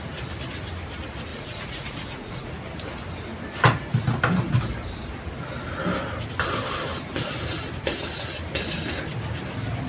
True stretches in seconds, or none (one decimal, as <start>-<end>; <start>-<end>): 0.0-1.3; 2.5-9.9